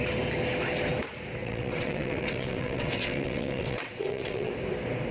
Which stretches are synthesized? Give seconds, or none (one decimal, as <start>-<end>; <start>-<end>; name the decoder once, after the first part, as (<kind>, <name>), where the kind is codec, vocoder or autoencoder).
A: 1.4-4.5 (vocoder, WaveNeXt)